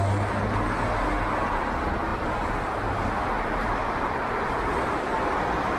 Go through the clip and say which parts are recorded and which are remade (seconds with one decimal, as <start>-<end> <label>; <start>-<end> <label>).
0.0-2.1 recorded; 2.1-5.0 remade; 5.0-5.8 recorded